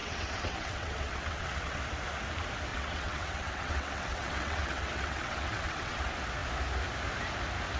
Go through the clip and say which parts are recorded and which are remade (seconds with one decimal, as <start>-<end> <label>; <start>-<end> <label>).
0.0-1.8 remade; 1.8-2.7 recorded; 2.7-6.0 remade; 6.0-7.8 recorded